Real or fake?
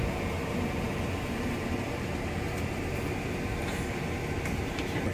real